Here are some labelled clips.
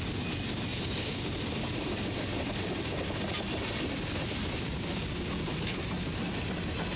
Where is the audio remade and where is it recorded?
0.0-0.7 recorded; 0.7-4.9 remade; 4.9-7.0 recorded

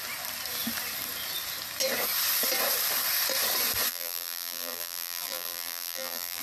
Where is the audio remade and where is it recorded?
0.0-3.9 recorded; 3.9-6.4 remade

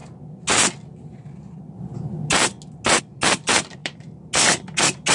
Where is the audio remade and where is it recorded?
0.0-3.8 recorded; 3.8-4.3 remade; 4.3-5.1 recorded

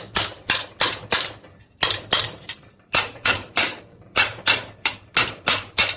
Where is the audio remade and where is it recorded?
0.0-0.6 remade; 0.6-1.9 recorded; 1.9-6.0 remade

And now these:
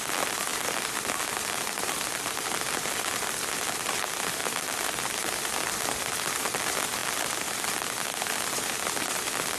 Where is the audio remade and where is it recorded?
0.0-4.4 recorded; 4.4-5.8 remade; 5.8-9.6 recorded

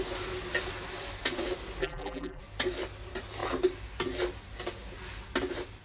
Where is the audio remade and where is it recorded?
0.0-1.8 recorded; 1.8-2.4 remade; 2.4-5.8 recorded

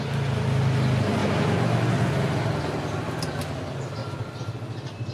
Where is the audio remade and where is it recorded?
0.0-4.0 recorded; 4.0-5.1 remade

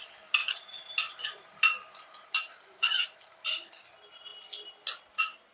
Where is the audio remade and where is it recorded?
0.0-0.4 recorded; 0.4-3.7 remade; 3.7-5.5 recorded